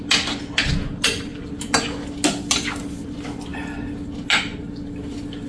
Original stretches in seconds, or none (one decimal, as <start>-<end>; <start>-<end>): 0.0-5.5